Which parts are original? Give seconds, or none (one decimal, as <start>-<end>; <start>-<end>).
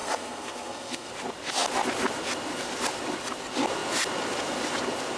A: 1.1-5.2